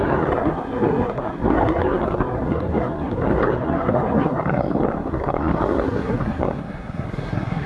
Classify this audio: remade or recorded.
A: remade